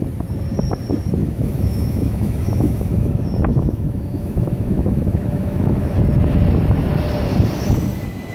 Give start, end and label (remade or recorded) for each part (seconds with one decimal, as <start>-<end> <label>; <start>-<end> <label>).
0.0-1.2 recorded; 1.2-6.0 remade; 6.0-8.3 recorded